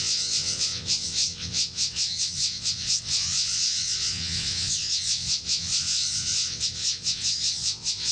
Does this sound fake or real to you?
fake